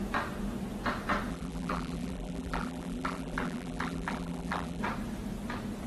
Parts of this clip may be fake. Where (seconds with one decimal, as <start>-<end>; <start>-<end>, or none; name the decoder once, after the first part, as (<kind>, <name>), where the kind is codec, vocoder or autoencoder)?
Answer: 1.3-4.8 (vocoder, BigVGAN v2)